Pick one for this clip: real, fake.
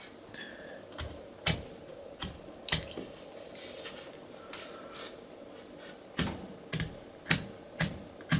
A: real